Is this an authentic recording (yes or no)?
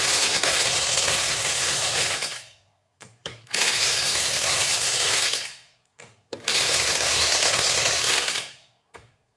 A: no